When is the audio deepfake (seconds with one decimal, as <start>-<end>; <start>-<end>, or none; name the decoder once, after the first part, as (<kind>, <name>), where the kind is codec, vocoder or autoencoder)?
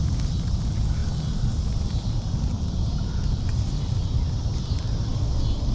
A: 1.0-4.4 (vocoder, BigVGAN v2); 5.1-5.7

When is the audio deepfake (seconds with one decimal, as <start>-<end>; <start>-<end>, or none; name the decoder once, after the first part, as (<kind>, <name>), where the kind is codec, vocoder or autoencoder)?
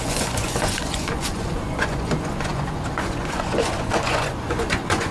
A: 0.0-5.1 (vocoder, Vocos)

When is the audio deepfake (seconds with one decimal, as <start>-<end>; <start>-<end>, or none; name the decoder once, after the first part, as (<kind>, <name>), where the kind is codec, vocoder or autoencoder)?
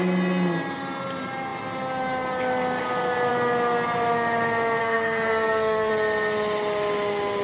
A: 4.8-5.9 (codec, SNAC)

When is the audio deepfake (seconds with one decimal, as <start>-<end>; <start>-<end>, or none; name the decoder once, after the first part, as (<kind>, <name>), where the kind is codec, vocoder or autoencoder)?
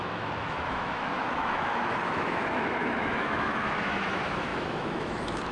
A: 0.0-5.5 (autoencoder, DAC-VAE)